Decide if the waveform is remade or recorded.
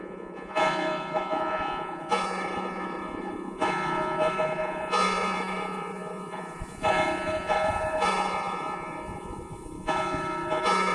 remade